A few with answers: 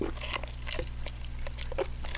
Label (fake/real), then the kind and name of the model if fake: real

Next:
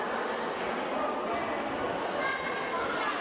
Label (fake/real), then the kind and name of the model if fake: real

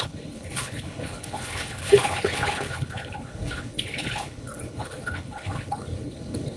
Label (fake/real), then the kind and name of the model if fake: fake, codec, HILCodec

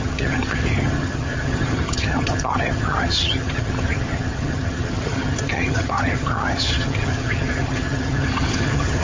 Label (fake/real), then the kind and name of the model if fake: fake, vocoder, HiFi-GAN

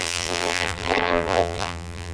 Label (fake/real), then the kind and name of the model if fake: fake, vocoder, BigVGAN v2